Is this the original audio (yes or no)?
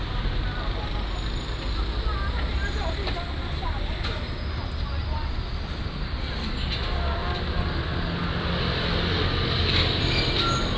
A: yes